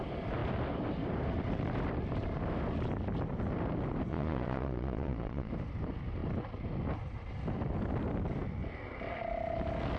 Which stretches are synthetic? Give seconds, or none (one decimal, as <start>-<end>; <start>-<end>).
4.1-5.5